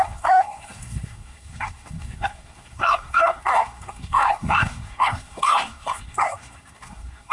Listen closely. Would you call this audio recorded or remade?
remade